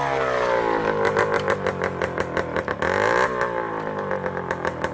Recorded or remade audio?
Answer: recorded